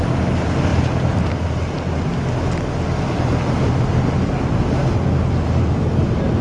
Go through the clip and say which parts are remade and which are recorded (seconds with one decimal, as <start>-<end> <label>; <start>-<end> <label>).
0.0-6.4 recorded